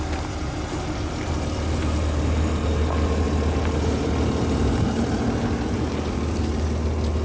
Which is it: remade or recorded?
recorded